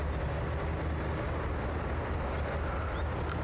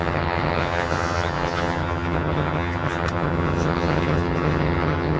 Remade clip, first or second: second